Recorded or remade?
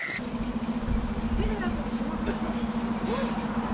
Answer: recorded